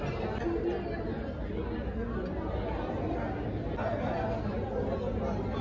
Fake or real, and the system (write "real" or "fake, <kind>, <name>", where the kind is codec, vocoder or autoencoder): real